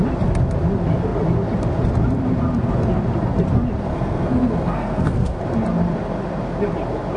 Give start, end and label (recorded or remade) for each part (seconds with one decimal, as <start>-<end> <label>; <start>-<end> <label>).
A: 0.0-3.9 recorded; 3.9-5.4 remade; 5.4-7.2 recorded